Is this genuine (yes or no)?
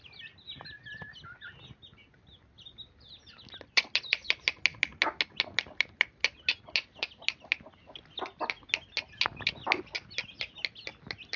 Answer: yes